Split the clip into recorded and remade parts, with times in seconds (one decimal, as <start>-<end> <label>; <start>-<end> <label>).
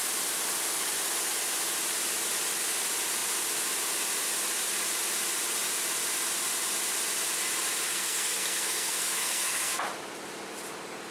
0.0-7.9 recorded; 7.9-9.7 remade; 9.7-11.1 recorded